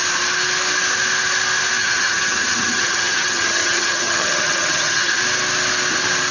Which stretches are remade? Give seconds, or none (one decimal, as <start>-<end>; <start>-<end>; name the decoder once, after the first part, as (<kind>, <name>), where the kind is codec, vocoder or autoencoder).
1.8-5.2 (vocoder, HiFi-GAN)